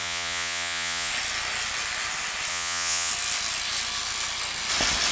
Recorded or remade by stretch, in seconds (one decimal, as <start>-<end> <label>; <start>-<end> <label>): 0.0-1.1 remade; 1.1-2.5 recorded; 2.5-3.1 remade; 3.1-5.1 recorded